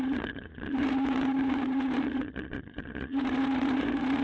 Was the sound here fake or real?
fake